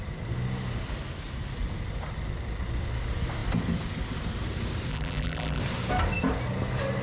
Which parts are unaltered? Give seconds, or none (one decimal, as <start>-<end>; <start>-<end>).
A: 0.0-4.9; 5.6-7.0